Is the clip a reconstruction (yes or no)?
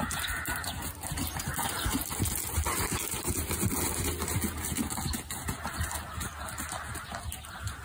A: no